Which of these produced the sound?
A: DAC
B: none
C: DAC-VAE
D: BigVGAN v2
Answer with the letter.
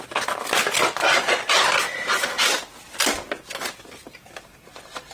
B